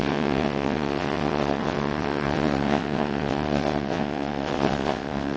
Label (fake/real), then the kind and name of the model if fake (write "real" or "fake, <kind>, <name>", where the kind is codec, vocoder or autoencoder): fake, vocoder, WaveNeXt